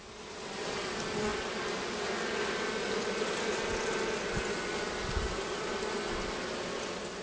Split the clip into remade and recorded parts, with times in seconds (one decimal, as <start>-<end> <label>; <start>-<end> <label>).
0.0-7.2 recorded